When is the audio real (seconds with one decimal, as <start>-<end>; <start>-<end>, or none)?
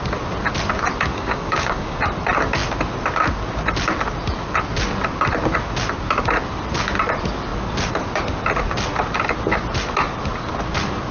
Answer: 0.0-1.1; 2.0-11.1